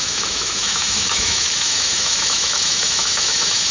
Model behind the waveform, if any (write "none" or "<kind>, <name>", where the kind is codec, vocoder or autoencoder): autoencoder, DAC-VAE